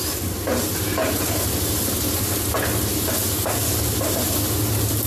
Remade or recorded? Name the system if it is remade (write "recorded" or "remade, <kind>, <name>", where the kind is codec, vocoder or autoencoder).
recorded